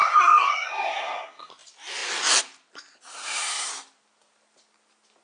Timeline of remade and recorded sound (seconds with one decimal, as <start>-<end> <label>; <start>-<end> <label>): 0.0-1.5 remade; 1.5-3.1 recorded; 3.1-3.7 remade; 3.7-5.2 recorded